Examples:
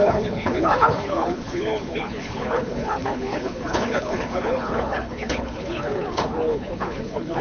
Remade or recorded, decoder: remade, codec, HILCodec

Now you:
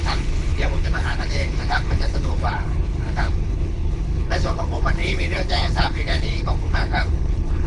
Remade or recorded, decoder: remade, codec, HILCodec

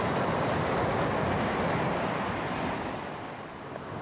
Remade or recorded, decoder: recorded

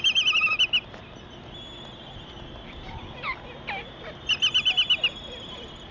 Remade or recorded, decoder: recorded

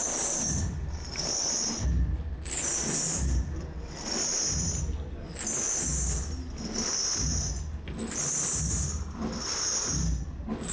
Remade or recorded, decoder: recorded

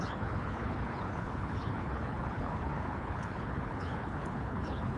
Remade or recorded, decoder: remade, codec, HILCodec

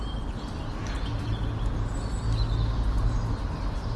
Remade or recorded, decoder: recorded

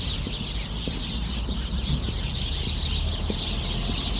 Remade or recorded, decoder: recorded